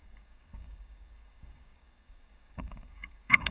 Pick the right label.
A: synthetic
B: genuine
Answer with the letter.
A